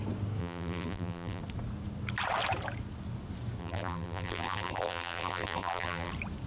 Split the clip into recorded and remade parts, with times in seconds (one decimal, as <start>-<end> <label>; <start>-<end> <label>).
0.0-0.4 recorded; 0.4-1.4 remade; 1.4-3.6 recorded; 3.6-6.1 remade; 6.1-6.5 recorded